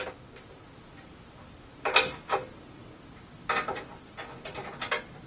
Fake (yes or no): no